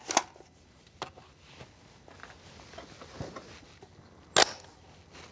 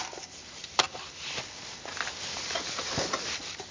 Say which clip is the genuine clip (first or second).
first